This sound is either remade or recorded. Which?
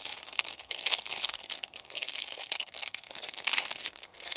remade